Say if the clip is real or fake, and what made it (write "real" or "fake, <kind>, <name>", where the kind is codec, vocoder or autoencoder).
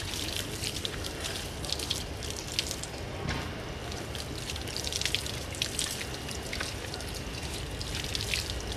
real